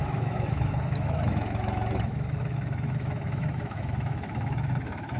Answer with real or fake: fake